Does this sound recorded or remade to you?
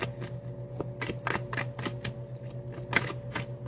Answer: recorded